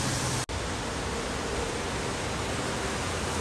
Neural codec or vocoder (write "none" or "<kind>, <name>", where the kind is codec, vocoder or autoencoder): none